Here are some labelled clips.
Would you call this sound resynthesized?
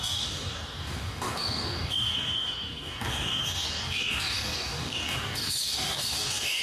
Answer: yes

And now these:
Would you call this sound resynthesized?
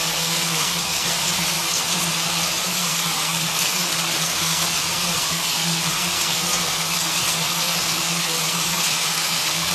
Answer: yes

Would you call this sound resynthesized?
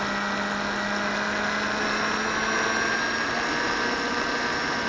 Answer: no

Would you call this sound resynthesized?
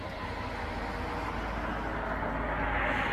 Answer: no